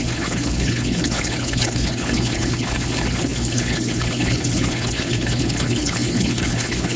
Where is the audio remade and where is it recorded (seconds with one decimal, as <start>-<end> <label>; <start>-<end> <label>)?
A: 0.0-7.0 remade